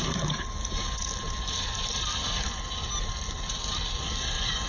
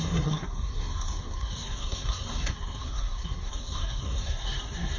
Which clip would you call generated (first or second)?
second